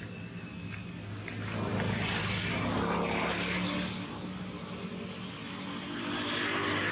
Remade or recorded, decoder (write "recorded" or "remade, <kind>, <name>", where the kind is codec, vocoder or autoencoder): recorded